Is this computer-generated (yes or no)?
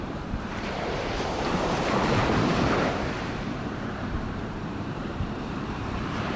yes